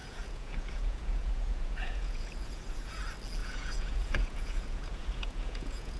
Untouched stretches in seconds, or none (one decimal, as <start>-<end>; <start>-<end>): 3.0-3.4